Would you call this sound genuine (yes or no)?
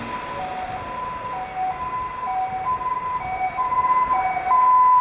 yes